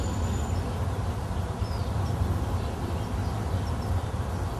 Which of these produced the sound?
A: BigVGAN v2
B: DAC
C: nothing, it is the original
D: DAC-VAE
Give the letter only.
C